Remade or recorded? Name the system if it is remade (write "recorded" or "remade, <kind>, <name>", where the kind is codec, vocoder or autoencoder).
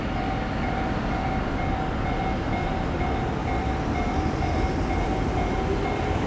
recorded